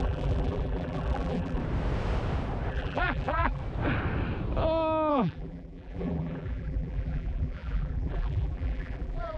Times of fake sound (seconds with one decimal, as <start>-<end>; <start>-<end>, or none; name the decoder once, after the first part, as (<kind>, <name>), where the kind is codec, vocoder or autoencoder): 0.0-1.6 (vocoder, BigVGAN v2); 2.7-3.6; 5.1-9.4